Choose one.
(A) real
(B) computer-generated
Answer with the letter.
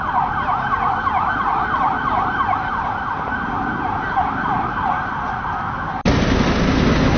A